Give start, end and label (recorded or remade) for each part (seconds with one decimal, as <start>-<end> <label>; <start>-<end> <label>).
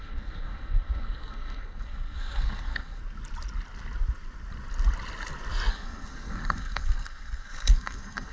0.0-3.0 remade; 3.0-5.7 recorded; 5.7-8.3 remade